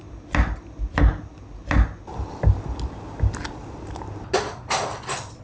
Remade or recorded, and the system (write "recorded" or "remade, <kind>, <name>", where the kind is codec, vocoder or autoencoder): recorded